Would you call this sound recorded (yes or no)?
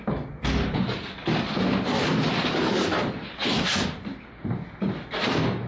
yes